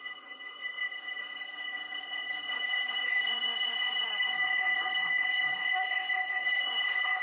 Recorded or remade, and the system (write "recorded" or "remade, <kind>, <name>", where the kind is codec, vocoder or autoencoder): remade, codec, SNAC